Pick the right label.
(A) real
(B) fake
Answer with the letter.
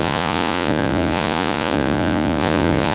B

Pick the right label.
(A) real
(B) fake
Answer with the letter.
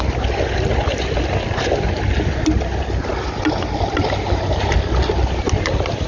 A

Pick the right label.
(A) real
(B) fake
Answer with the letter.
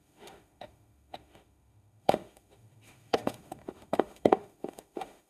B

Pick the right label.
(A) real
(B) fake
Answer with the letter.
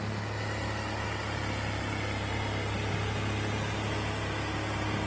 A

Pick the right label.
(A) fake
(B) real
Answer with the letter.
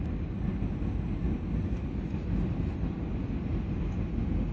B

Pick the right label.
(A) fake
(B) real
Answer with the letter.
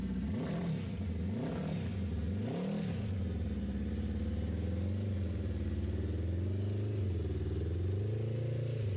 B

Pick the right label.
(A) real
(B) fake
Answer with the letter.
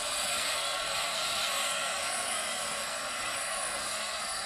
B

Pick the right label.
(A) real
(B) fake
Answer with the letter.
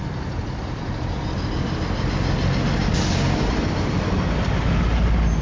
A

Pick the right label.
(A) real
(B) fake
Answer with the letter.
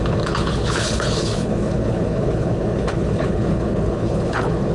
B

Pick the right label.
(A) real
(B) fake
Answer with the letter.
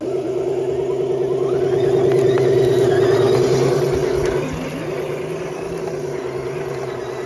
A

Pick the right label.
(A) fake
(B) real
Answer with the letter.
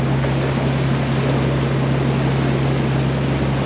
B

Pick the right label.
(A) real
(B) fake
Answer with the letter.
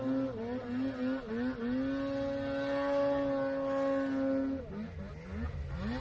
A